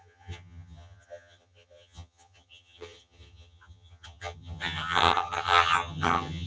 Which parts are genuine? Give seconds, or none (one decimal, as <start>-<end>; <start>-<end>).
none